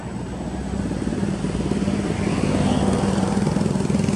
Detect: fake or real real